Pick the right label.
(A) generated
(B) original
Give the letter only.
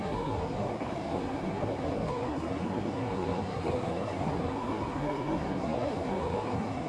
A